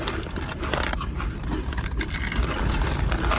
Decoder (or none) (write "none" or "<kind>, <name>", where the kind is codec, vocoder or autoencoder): none